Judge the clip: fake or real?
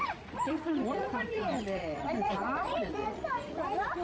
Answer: fake